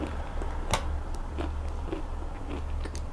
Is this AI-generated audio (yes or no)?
no